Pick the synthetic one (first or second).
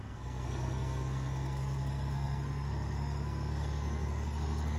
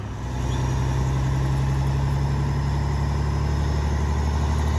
first